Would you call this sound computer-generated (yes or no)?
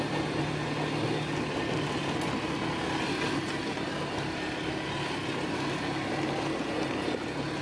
no